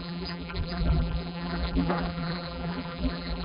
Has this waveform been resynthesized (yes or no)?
yes